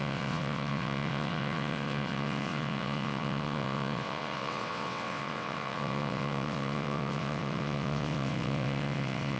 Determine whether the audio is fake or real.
fake